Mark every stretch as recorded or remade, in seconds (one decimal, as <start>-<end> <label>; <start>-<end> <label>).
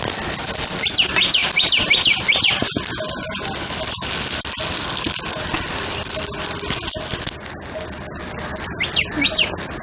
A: 0.0-9.8 recorded